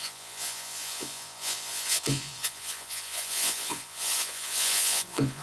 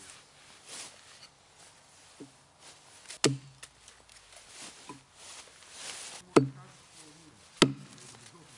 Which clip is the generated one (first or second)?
first